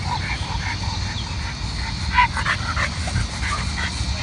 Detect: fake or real real